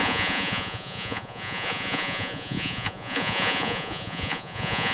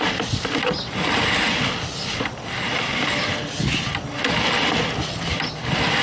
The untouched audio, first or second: second